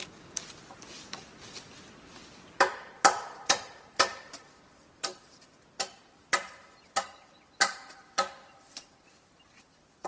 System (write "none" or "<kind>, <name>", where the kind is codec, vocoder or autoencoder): vocoder, BigVGAN v2